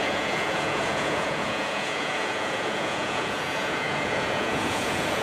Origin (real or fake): fake